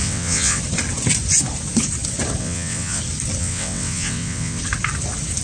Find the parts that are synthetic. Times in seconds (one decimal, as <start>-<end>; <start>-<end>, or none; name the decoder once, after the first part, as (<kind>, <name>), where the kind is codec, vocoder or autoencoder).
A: 0.0-0.6 (vocoder, WaveNeXt); 2.4-3.0; 3.4-4.6